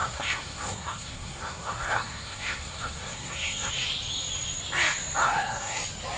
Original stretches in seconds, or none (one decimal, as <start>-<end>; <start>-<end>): 3.7-5.2; 5.8-6.2